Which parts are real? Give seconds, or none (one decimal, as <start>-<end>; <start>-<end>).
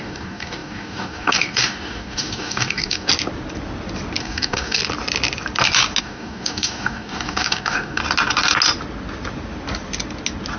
3.1-4.2; 4.8-6.0; 8.0-10.6